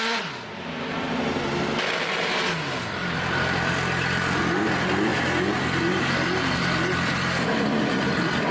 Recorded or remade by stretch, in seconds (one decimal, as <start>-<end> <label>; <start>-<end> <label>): 0.0-3.0 recorded; 3.0-4.5 remade; 4.5-5.1 recorded; 5.1-8.5 remade